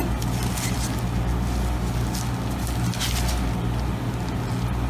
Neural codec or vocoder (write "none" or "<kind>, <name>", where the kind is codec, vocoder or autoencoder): none